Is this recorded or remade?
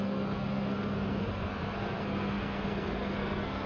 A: remade